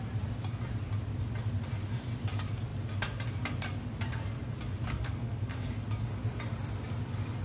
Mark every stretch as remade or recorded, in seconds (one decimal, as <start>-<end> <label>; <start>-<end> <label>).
0.0-4.9 recorded; 4.9-5.7 remade; 5.7-7.4 recorded